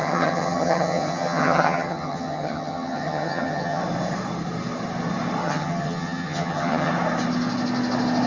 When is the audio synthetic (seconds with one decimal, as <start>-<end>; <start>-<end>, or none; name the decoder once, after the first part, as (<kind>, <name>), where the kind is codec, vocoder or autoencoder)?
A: 0.0-3.8 (vocoder, HiFi-GAN); 5.4-6.9